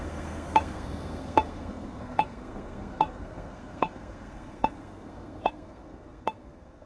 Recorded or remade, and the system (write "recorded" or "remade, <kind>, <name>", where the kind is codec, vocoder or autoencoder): remade, codec, SNAC